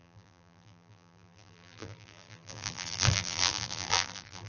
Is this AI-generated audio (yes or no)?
yes